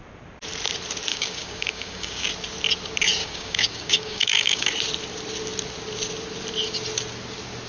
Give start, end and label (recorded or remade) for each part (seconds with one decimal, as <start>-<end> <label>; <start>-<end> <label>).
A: 0.0-1.1 recorded; 1.1-2.3 remade; 2.3-3.2 recorded; 3.2-4.7 remade; 4.7-7.7 recorded